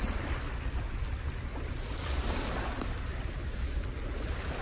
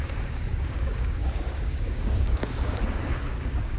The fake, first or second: second